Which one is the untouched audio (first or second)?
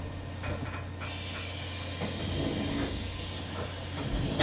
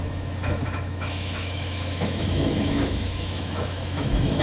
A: first